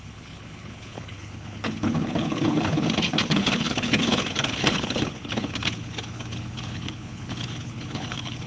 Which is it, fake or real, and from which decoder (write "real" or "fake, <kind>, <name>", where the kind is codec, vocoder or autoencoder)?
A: fake, codec, HILCodec